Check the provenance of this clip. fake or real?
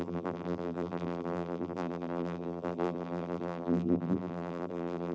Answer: fake